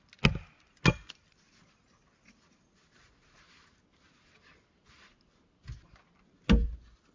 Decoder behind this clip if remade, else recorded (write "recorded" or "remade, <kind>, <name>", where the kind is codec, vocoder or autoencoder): recorded